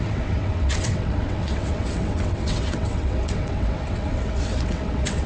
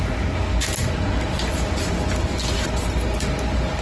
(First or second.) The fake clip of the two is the first